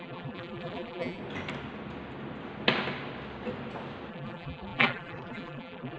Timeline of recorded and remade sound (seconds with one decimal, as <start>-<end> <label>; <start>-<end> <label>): 0.0-1.2 remade; 1.2-4.1 recorded; 4.1-6.0 remade